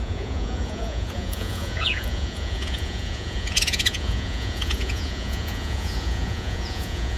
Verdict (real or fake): fake